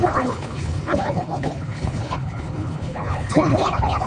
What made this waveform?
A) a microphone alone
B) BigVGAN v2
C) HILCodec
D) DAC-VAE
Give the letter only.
C